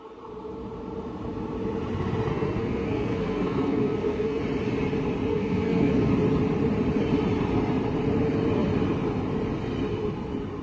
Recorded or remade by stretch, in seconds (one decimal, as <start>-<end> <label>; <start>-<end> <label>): 0.0-2.3 recorded; 2.3-4.4 remade; 4.4-5.3 recorded; 5.3-6.1 remade; 6.1-10.6 recorded

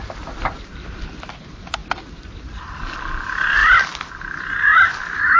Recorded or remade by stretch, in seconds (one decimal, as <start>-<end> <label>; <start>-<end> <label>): 0.0-5.4 recorded

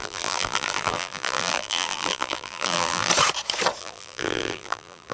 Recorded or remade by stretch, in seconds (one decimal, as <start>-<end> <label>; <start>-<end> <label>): 0.0-3.1 remade; 3.1-3.8 recorded; 3.8-5.1 remade